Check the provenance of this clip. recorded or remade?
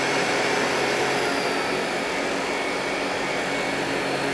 recorded